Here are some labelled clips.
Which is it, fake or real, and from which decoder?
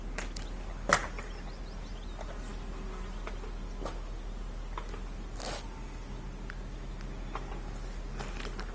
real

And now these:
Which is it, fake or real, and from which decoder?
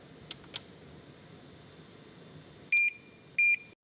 real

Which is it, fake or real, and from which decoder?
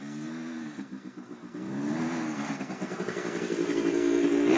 fake, codec, SNAC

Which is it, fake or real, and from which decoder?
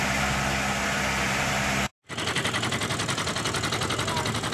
real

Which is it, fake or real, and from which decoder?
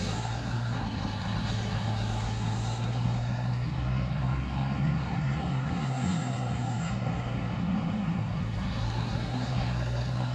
fake, codec, SNAC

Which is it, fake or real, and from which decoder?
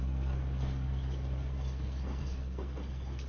fake, codec, SNAC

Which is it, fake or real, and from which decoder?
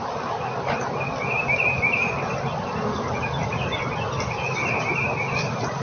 real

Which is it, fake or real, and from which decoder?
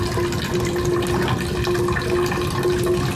real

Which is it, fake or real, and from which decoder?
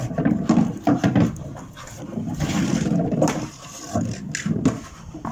real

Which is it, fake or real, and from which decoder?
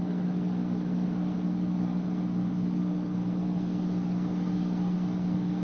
fake, codec, SNAC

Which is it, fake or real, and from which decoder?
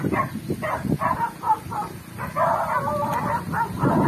real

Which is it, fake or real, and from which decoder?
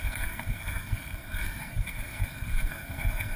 fake, codec, SNAC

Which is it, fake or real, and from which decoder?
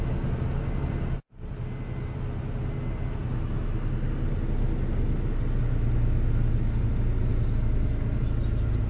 real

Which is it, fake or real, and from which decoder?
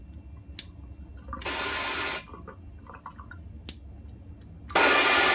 real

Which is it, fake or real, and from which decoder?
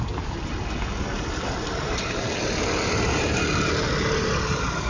real